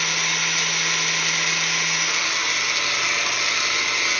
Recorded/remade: recorded